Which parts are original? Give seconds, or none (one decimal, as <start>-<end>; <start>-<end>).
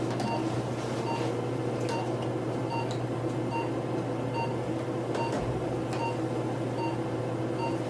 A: 0.0-7.9